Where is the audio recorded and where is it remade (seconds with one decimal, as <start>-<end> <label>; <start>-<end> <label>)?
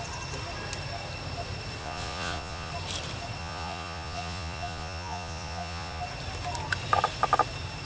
0.0-1.8 recorded; 1.8-2.7 remade; 2.7-3.4 recorded; 3.4-6.0 remade; 6.0-7.8 recorded